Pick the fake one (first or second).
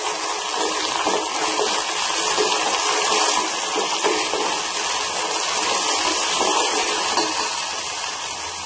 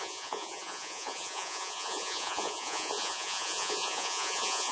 second